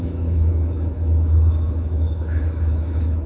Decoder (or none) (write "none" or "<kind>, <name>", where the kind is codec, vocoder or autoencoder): autoencoder, DAC-VAE